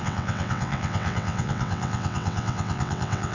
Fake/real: fake